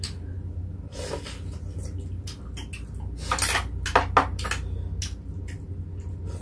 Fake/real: real